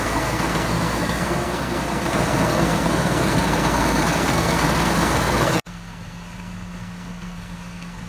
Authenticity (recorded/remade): remade